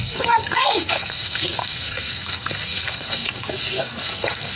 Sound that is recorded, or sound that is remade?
remade